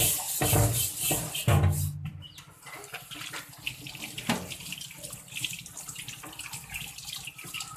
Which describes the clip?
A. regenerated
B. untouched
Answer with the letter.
B